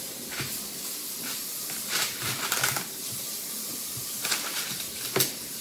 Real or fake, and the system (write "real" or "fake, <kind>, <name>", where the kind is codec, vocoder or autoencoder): real